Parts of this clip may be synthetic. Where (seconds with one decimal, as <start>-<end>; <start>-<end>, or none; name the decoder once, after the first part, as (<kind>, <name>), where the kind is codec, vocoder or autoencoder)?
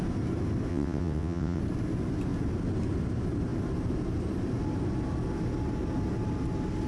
0.7-1.6 (vocoder, WaveNeXt)